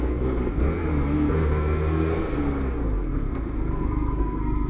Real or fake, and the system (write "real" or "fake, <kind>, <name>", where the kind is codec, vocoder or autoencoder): fake, codec, SNAC